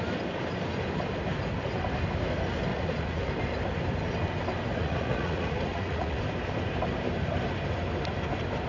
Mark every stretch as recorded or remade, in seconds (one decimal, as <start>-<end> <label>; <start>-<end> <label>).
0.0-2.7 recorded; 2.7-3.3 remade; 3.3-4.7 recorded; 4.7-6.2 remade; 6.2-8.7 recorded

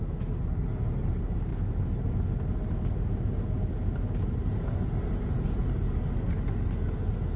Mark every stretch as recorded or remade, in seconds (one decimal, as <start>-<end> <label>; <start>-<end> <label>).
0.0-7.4 recorded

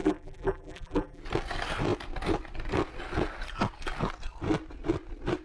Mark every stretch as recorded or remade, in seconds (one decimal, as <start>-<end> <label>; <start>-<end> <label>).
0.0-1.2 remade; 1.2-5.4 recorded

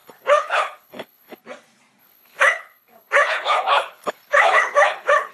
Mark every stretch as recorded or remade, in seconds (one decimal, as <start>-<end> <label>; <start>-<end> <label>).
0.0-1.4 remade; 1.4-2.0 recorded; 2.0-5.3 remade

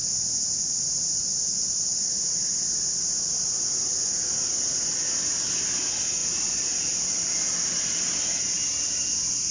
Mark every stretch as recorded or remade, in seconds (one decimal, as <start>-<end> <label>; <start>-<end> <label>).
0.0-2.5 remade; 2.5-6.2 recorded; 6.2-8.4 remade; 8.4-9.5 recorded